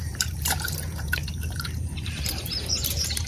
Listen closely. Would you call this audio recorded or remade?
remade